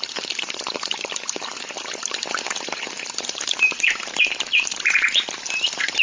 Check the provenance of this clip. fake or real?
fake